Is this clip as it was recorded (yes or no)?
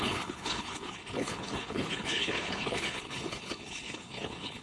no